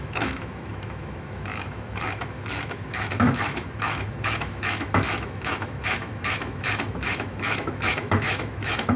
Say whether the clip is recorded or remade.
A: remade